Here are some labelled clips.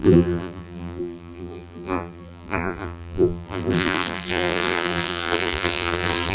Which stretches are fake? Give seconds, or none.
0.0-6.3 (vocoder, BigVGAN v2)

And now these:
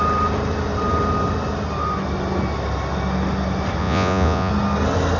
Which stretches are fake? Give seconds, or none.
3.8-4.5 (vocoder, Vocos)

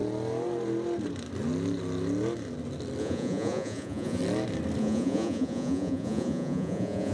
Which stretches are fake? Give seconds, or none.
3.0-4.2 (vocoder, Vocos); 4.8-7.1

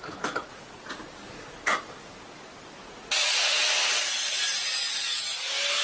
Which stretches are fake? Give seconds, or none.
0.4-1.0 (vocoder, Vocos); 2.8-3.6

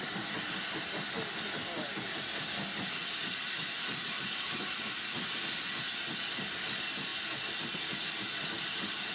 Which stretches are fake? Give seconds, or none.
none

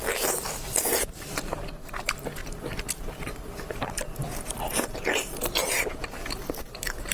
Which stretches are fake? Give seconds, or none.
0.0-2.4 (vocoder, BigVGAN v2); 2.9-5.6; 6.6-7.1